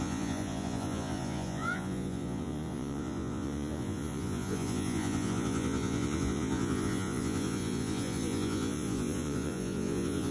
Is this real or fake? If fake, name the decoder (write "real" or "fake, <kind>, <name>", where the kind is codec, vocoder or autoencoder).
fake, vocoder, Vocos